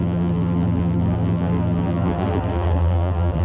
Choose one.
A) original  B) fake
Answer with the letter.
B